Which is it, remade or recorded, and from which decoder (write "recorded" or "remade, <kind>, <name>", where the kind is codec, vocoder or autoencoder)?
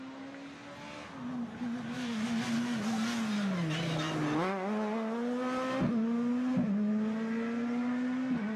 recorded